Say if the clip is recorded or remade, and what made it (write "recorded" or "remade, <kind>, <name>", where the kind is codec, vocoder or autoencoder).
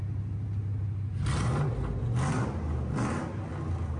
recorded